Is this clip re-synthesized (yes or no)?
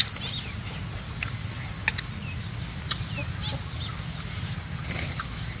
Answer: no